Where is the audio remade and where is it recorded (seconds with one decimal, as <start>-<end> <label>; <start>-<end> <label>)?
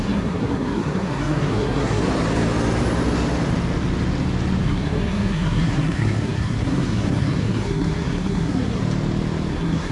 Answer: 0.0-2.0 remade; 2.0-4.6 recorded; 4.6-8.8 remade; 8.8-9.5 recorded; 9.5-9.9 remade